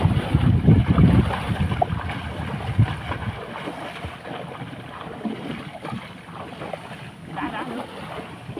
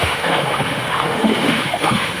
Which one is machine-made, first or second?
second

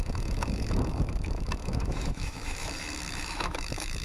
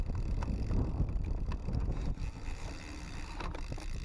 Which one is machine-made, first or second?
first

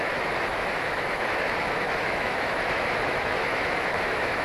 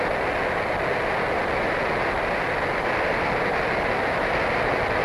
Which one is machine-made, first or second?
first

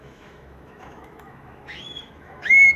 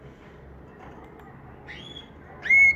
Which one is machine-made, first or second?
first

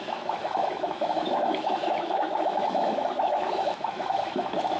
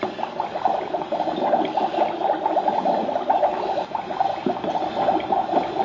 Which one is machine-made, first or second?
first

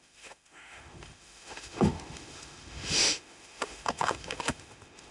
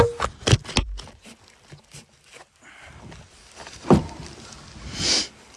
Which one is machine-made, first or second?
first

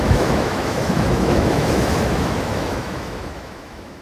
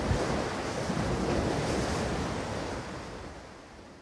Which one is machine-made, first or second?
first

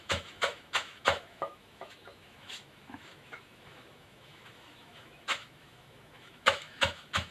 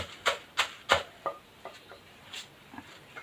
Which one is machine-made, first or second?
first